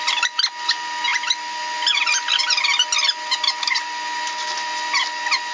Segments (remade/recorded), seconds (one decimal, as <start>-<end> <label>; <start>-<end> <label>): 0.0-5.5 recorded